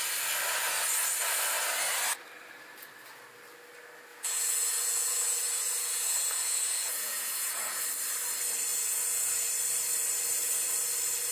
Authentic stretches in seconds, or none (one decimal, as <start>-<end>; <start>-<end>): 0.0-4.1; 7.8-8.7; 9.5-11.3